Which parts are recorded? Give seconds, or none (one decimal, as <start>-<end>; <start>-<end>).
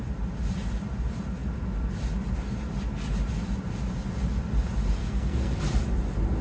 0.0-5.0; 5.6-6.4